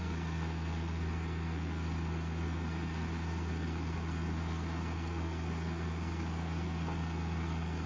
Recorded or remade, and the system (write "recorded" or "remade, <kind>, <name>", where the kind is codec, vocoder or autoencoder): remade, codec, SNAC